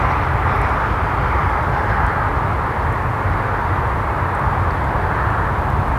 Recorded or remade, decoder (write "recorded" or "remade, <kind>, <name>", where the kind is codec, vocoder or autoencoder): recorded